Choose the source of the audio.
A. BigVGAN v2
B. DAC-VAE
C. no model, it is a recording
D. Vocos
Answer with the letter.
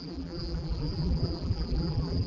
A